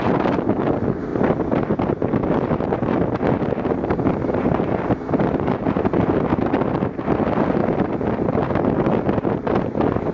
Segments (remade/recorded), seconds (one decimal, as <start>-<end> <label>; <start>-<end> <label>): 0.0-10.1 recorded